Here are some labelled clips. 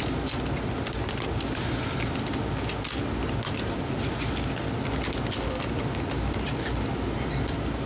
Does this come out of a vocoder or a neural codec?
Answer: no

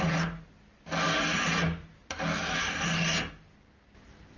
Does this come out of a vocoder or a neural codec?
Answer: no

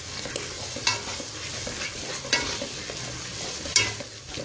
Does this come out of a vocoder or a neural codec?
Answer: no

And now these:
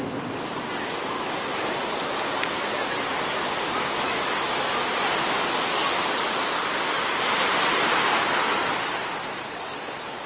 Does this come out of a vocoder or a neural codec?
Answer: no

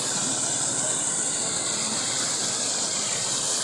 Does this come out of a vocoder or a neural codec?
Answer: no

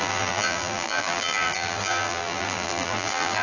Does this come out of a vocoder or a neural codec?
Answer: yes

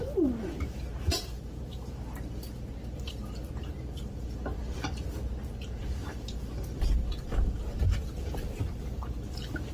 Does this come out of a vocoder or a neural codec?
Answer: yes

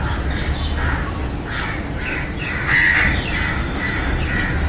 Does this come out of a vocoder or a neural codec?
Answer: no